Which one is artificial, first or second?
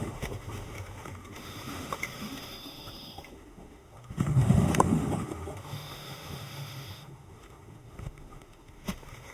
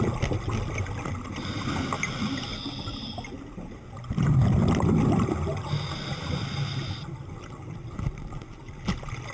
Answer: first